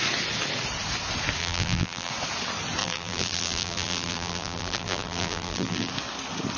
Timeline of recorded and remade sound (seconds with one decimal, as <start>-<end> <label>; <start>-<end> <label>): 0.0-1.4 recorded; 1.4-2.1 remade; 2.1-2.8 recorded; 2.8-5.9 remade; 5.9-6.6 recorded